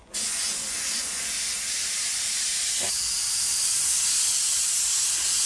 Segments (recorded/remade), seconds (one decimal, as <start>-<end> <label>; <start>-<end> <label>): 0.0-1.3 remade; 1.3-5.5 recorded